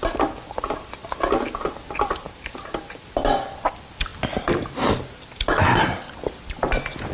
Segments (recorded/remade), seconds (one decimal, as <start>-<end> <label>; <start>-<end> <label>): 0.0-7.1 recorded